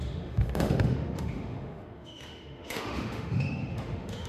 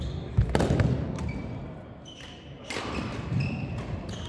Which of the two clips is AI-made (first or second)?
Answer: first